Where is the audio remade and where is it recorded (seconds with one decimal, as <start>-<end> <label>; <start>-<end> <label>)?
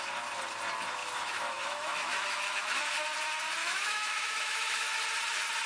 0.0-1.0 recorded; 1.0-2.8 remade; 2.8-3.6 recorded; 3.6-5.0 remade; 5.0-5.7 recorded